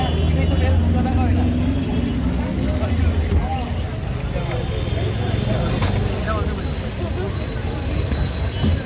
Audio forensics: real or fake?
real